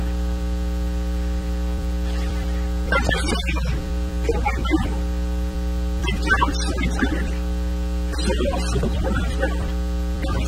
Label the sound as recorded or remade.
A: remade